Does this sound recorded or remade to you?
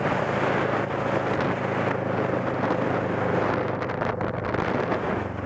recorded